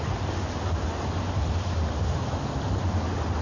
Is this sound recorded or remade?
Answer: recorded